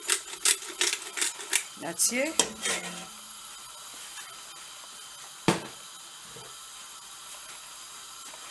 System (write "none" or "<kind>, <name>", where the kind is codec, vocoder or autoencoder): none